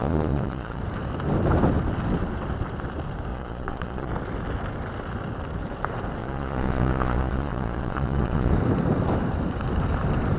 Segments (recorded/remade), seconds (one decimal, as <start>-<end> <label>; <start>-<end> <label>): 0.0-0.8 remade; 0.8-3.3 recorded; 3.3-4.1 remade; 4.1-6.2 recorded; 6.2-8.5 remade; 8.5-10.4 recorded